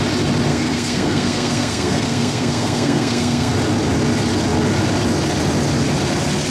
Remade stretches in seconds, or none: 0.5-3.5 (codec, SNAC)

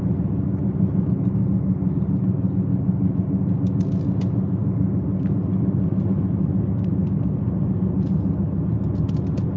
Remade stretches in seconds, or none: none

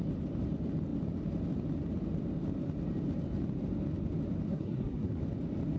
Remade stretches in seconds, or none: 4.5-5.2 (codec, SNAC)

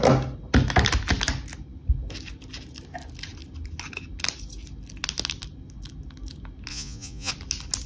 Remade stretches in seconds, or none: 6.7-7.3 (vocoder, Vocos)